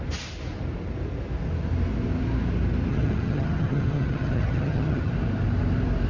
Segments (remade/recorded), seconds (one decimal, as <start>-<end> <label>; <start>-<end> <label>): 0.0-2.9 recorded; 2.9-5.1 remade; 5.1-6.1 recorded